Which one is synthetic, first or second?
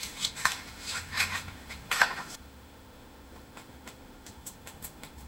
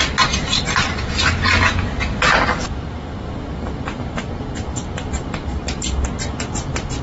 first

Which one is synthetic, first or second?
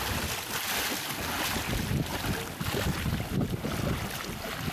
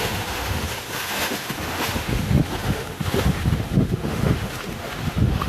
second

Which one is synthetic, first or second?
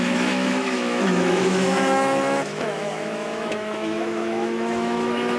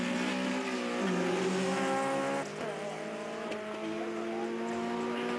first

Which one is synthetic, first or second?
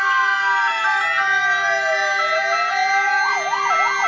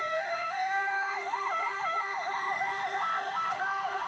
second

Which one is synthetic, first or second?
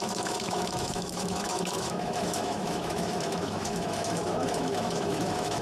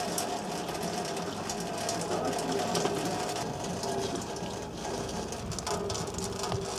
first